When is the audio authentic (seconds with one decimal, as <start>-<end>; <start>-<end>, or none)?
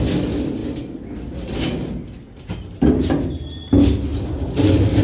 0.0-5.0